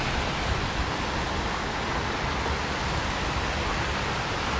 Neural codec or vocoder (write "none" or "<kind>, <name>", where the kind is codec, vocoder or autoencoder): none